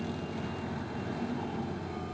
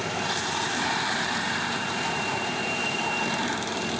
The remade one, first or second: second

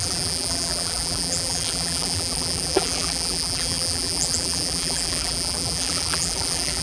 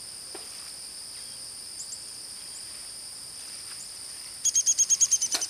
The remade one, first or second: first